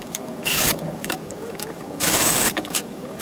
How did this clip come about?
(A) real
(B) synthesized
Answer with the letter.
B